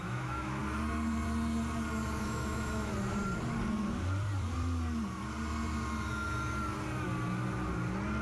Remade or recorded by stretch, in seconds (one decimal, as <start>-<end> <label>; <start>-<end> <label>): 0.0-0.6 remade; 0.6-2.2 recorded; 2.2-2.9 remade; 2.9-8.2 recorded